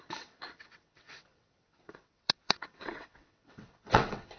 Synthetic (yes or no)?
yes